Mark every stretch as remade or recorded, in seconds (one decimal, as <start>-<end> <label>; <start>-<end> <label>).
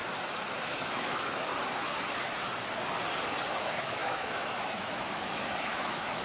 0.0-0.7 recorded; 0.7-1.5 remade; 1.5-3.5 recorded; 3.5-6.2 remade